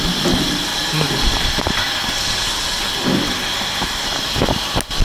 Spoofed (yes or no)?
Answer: no